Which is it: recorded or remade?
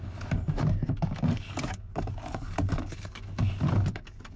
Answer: remade